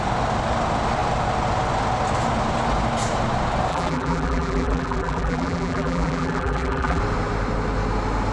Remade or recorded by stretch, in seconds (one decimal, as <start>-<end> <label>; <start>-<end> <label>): 0.0-3.7 recorded; 3.7-7.0 remade; 7.0-8.3 recorded